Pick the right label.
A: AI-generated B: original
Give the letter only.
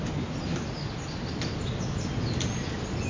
B